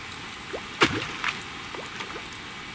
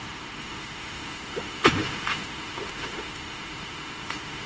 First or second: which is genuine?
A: first